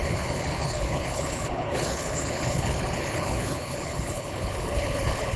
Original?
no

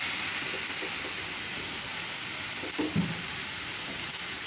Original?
yes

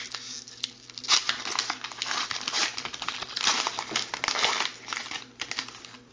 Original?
yes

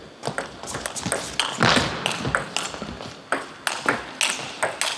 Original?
yes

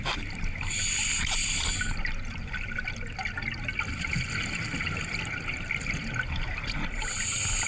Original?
yes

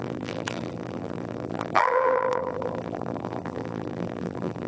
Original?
no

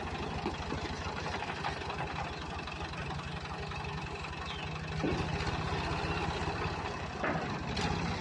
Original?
yes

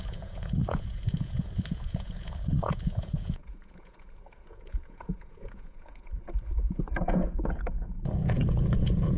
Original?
no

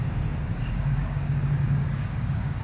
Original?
no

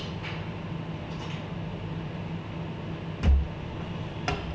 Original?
yes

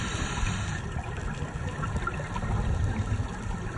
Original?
no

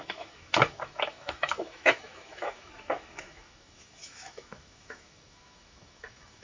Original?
no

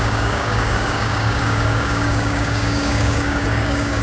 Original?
no